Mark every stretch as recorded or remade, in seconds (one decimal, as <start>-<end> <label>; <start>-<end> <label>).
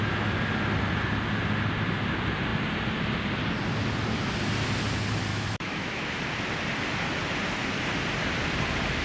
0.0-5.3 recorded; 5.3-6.1 remade; 6.1-9.0 recorded